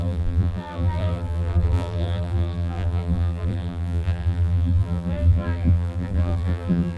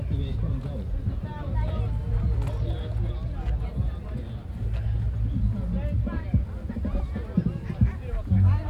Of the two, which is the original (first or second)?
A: second